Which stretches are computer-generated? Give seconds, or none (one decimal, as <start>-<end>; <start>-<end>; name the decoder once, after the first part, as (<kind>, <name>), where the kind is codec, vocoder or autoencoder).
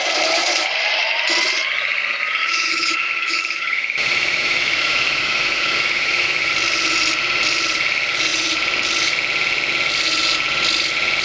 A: 2.4-6.5 (autoencoder, DAC-VAE)